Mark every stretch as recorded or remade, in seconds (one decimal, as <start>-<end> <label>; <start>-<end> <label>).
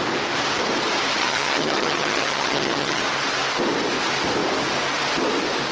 0.0-1.2 recorded; 1.2-3.0 remade; 3.0-5.7 recorded